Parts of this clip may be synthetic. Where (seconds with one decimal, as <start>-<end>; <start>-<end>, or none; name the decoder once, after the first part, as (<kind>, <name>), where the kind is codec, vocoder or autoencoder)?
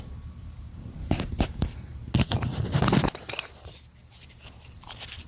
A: 0.0-1.9 (vocoder, BigVGAN v2); 4.0-5.3